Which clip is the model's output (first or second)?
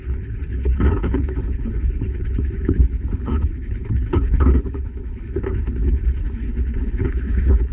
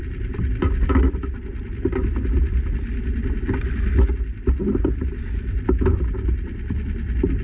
first